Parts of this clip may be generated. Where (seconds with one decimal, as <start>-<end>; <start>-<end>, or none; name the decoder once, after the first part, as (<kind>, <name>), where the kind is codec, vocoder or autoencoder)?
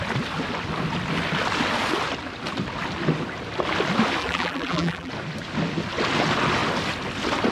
4.2-5.1 (vocoder, BigVGAN v2)